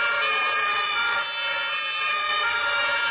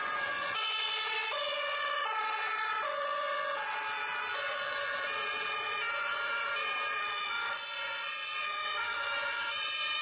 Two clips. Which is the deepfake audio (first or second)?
second